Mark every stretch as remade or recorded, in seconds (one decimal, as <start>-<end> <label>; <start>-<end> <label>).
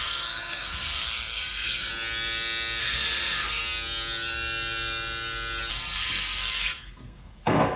0.0-1.9 remade; 1.9-2.8 recorded; 2.8-3.6 remade; 3.6-5.7 recorded; 5.7-7.8 remade